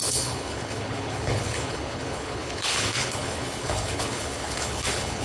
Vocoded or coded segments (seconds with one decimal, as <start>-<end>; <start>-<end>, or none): 0.0-5.2